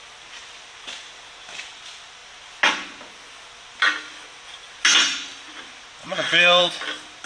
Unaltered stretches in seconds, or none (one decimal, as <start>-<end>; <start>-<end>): 0.0-6.0; 6.7-7.3